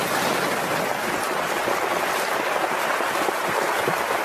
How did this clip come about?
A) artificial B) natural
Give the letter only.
B